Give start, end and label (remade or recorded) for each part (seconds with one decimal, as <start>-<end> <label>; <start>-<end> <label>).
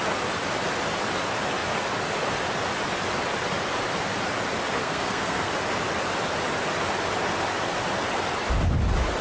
0.0-4.8 recorded; 4.8-5.5 remade; 5.5-9.2 recorded